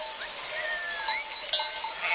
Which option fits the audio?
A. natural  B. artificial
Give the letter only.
A